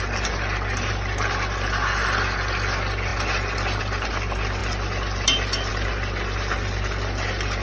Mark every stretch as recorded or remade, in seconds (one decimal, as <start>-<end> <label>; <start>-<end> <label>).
0.0-7.6 recorded